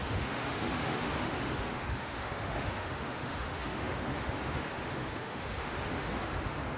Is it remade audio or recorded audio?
remade